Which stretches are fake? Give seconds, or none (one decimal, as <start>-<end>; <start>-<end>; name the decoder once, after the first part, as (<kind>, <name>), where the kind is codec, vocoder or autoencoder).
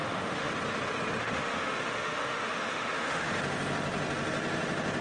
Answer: 0.0-0.5 (autoencoder, DAC-VAE); 1.2-3.4